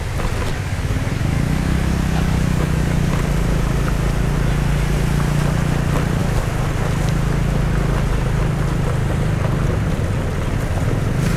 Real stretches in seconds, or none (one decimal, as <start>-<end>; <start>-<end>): 0.0-0.5; 3.1-11.4